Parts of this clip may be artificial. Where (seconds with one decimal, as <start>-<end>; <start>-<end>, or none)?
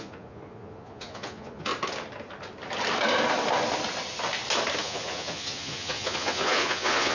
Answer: 0.0-1.7; 4.8-7.1